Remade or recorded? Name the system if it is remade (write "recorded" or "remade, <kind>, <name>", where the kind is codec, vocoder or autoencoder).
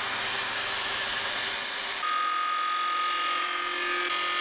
recorded